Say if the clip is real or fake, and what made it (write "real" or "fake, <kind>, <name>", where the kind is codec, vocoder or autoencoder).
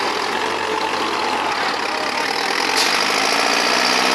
real